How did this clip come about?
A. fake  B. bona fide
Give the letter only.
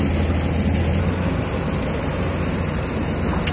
B